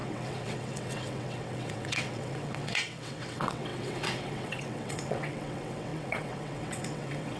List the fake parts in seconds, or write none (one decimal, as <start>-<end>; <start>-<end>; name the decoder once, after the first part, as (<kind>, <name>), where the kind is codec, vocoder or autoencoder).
0.0-7.4 (vocoder, WaveNeXt)